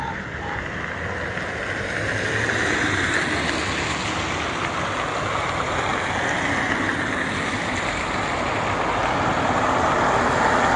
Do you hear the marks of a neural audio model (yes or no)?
no